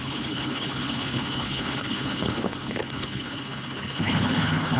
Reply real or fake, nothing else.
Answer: fake